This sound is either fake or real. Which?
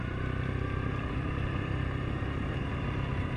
fake